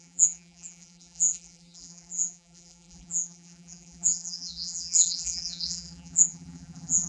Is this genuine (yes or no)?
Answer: no